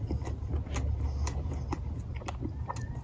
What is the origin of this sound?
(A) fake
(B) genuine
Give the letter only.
B